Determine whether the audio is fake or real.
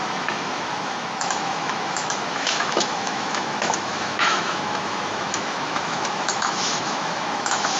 fake